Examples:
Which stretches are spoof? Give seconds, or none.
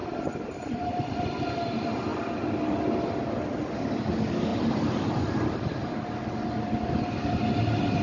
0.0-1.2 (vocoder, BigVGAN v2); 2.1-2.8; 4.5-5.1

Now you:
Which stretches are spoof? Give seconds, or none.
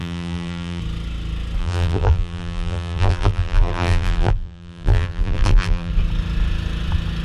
0.0-0.8 (vocoder, BigVGAN v2); 1.6-5.9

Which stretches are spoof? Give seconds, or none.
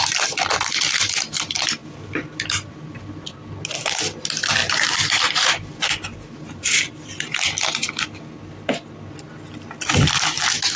1.8-3.3 (vocoder, BigVGAN v2); 4.6-6.8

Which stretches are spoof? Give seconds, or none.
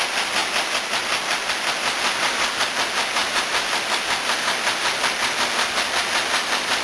3.2-5.4 (vocoder, BigVGAN v2)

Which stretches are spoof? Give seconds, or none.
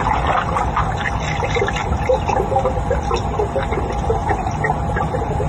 0.0-4.2 (vocoder, BigVGAN v2); 4.9-5.5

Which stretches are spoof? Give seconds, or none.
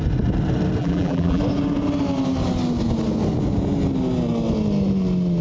0.8-1.4 (vocoder, BigVGAN v2)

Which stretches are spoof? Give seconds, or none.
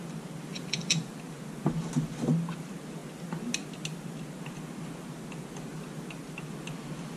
0.5-1.1 (vocoder, BigVGAN v2)